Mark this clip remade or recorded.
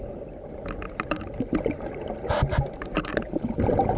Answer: recorded